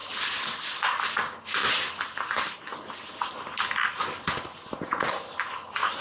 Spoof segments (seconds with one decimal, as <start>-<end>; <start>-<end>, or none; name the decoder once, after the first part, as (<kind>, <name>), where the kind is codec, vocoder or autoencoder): none